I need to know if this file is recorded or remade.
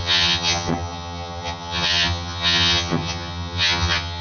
remade